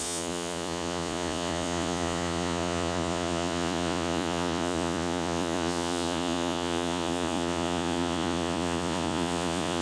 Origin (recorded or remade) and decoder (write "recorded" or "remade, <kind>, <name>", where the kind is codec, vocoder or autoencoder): remade, vocoder, Vocos